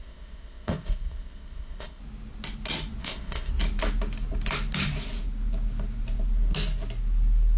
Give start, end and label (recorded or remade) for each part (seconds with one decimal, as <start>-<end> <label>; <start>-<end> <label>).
0.0-2.0 remade; 2.0-3.0 recorded; 3.0-3.5 remade; 3.5-7.6 recorded